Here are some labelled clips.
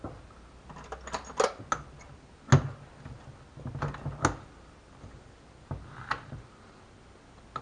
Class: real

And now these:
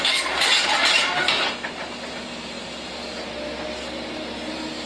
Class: real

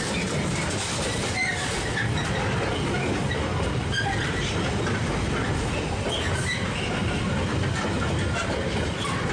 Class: real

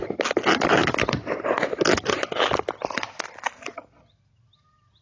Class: real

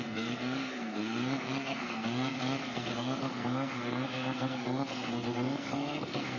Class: fake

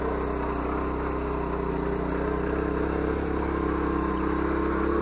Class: real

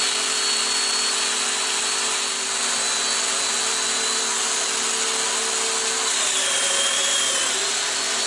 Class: real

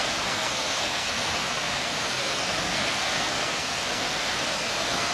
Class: fake